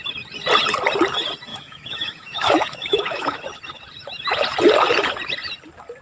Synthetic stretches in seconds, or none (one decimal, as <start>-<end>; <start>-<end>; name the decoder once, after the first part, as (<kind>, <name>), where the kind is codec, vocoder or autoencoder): 1.5-3.4 (autoencoder, DAC-VAE)